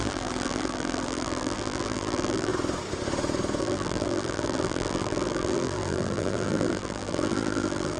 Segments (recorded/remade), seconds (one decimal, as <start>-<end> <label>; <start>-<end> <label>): 0.0-2.5 remade; 2.5-3.6 recorded; 3.6-8.0 remade